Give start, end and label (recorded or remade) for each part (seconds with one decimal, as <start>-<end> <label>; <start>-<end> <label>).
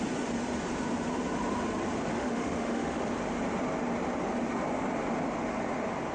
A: 0.0-2.1 recorded; 2.1-3.1 remade; 3.1-6.1 recorded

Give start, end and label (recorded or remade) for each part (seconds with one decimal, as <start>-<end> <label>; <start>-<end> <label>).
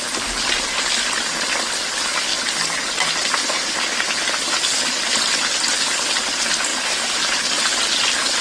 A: 0.0-6.7 recorded; 6.7-7.6 remade; 7.6-8.4 recorded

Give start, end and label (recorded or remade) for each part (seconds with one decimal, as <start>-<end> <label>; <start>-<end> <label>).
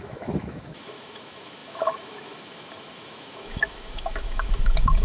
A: 0.0-5.0 remade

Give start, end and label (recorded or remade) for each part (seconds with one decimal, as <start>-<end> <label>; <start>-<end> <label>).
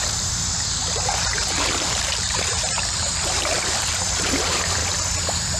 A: 0.0-0.8 remade; 0.8-1.4 recorded; 1.4-4.8 remade; 4.8-5.6 recorded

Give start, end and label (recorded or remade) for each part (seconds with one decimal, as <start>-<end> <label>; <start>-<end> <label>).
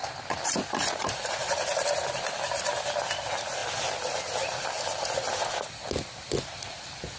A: 0.0-7.2 recorded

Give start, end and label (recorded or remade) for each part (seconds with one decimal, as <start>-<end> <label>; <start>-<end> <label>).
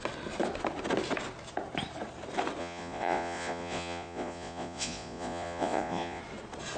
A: 0.0-2.6 recorded; 2.6-6.2 remade; 6.2-6.8 recorded